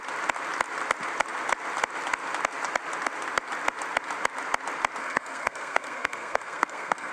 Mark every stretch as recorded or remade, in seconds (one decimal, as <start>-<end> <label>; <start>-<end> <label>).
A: 0.0-5.0 recorded; 5.0-7.1 remade